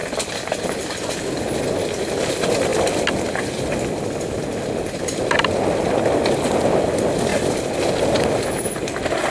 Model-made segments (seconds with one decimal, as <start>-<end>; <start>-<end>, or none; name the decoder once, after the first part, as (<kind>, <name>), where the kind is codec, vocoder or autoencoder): none